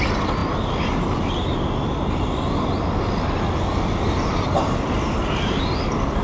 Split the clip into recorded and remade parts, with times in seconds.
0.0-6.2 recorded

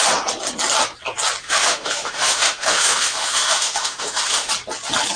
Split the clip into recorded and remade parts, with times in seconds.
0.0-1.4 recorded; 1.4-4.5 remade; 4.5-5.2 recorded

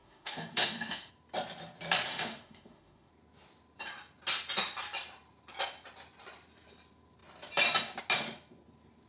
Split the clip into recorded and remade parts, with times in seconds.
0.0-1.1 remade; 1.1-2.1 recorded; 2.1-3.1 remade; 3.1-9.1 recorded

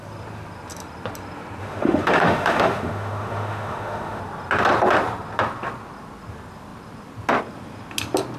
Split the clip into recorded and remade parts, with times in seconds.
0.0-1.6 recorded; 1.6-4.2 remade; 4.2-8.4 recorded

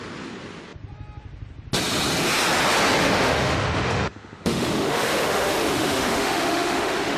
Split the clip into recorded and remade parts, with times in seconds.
0.0-3.0 recorded; 3.0-7.2 remade

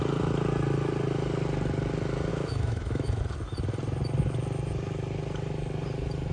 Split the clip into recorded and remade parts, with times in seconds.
0.0-2.3 recorded; 2.3-3.2 remade; 3.2-6.3 recorded